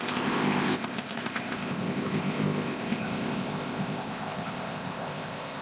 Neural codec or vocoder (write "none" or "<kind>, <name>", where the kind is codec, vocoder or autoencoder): codec, ZipCodec